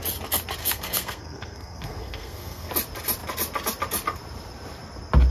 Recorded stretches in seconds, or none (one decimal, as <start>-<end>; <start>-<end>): 0.0-0.6; 2.7-5.3